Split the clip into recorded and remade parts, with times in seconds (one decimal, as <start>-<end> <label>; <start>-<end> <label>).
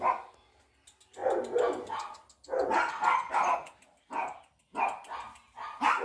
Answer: 0.0-6.0 recorded